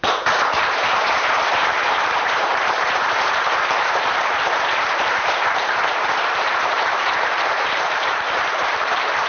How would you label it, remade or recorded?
remade